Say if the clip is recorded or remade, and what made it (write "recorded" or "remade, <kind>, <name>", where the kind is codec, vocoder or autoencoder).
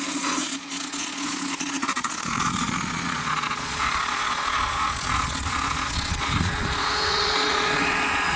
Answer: remade, vocoder, Vocos